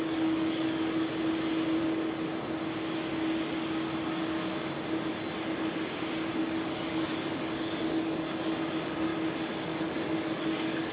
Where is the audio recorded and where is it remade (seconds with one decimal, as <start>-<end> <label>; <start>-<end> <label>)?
0.0-1.1 remade; 1.1-1.8 recorded; 1.8-2.3 remade; 2.3-6.3 recorded; 6.3-9.1 remade; 9.1-9.6 recorded; 9.6-10.9 remade